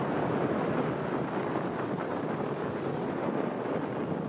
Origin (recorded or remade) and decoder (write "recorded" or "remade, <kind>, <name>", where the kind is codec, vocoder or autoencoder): remade, vocoder, BigVGAN v2